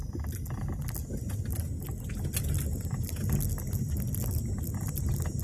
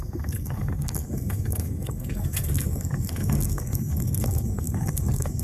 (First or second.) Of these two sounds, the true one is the first